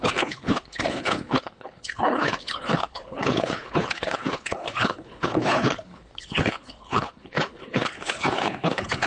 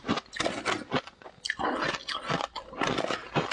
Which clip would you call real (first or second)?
second